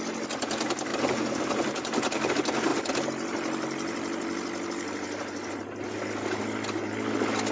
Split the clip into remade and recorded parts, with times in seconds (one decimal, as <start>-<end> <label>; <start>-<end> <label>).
0.0-0.9 recorded; 0.9-2.3 remade; 2.3-7.5 recorded